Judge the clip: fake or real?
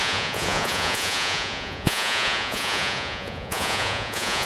fake